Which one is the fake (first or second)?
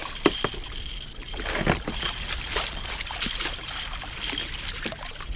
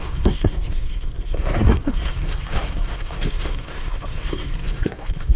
second